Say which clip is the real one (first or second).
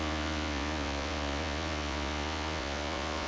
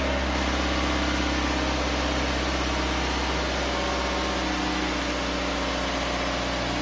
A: second